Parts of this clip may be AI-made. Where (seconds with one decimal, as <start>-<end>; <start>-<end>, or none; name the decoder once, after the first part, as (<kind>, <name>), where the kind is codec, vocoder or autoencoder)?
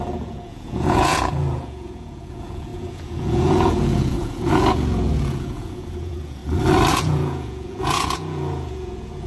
0.0-6.4 (vocoder, Vocos); 6.9-9.3